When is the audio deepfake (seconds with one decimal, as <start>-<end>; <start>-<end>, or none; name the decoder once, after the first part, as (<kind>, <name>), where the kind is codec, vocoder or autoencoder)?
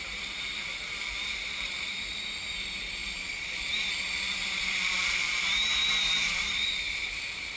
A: 0.0-7.6 (vocoder, BigVGAN v2)